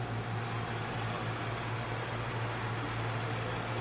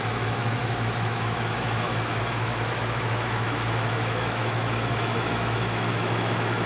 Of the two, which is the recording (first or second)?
first